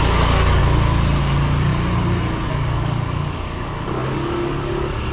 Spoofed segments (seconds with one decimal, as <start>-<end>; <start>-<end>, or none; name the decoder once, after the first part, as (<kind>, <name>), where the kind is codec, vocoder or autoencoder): 0.0-0.6 (codec, DAC); 1.2-1.7; 2.5-5.1